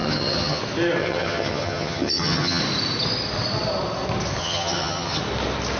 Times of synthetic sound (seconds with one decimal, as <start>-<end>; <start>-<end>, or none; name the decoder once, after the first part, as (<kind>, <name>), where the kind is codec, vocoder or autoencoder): 0.0-0.6 (vocoder, HiFi-GAN); 1.0-2.6; 4.4-5.2